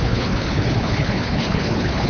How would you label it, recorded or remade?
remade